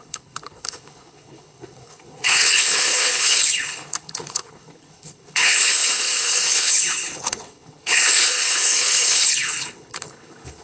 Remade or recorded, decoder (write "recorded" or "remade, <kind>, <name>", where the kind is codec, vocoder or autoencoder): remade, codec, HILCodec